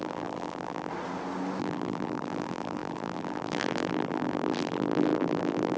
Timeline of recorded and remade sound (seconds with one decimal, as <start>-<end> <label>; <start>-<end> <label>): 0.0-0.9 remade; 0.9-1.6 recorded; 1.6-5.8 remade